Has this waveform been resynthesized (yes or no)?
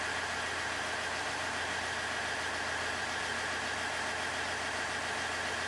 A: no